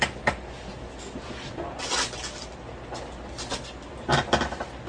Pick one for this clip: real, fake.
real